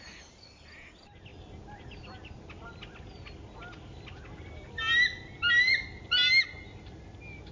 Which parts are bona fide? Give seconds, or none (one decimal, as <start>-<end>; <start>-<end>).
0.0-7.5